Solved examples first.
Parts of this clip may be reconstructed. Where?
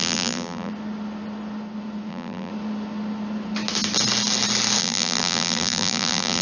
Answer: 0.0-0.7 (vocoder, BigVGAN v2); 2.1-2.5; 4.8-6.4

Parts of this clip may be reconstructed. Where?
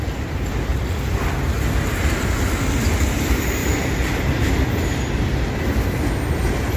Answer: 0.7-1.2 (vocoder, BigVGAN v2); 3.6-4.7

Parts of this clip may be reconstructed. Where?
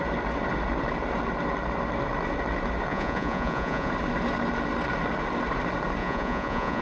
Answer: 2.9-3.9 (vocoder, Vocos); 6.0-6.8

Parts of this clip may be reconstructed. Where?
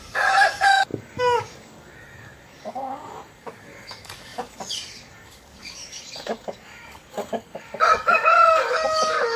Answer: 0.0-9.4 (codec, DAC)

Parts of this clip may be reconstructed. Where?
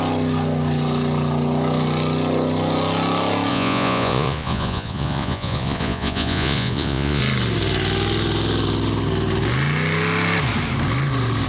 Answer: 3.5-7.2 (vocoder, Vocos)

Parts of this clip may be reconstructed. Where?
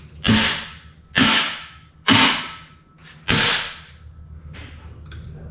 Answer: 1.2-1.9 (autoencoder, DAC-VAE)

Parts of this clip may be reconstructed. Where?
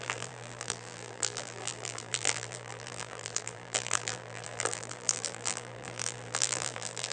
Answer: 0.0-7.1 (vocoder, BigVGAN v2)